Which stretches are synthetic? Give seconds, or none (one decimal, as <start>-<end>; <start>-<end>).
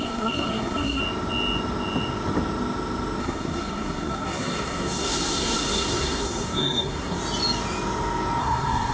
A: 0.0-1.0; 3.2-7.2; 8.4-8.9